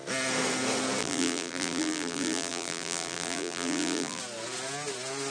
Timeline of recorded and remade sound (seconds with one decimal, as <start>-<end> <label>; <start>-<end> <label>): 0.0-1.0 recorded; 1.0-4.2 remade; 4.2-5.3 recorded